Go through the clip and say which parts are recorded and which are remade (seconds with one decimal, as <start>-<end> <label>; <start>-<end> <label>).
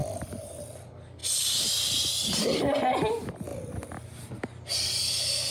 0.0-0.5 remade; 0.5-5.5 recorded